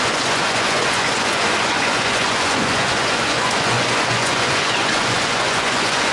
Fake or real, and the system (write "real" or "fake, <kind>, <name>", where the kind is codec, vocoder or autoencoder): fake, vocoder, Vocos